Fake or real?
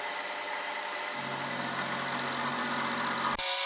real